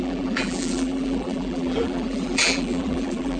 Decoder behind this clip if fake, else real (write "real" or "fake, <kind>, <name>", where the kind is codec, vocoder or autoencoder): fake, vocoder, BigVGAN v2